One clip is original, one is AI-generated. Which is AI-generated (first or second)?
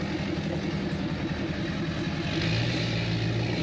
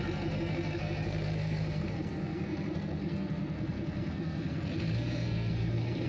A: second